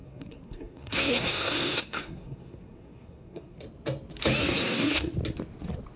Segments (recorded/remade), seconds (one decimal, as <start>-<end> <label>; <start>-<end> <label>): 0.0-3.6 remade; 3.6-4.4 recorded; 4.4-5.1 remade; 5.1-6.0 recorded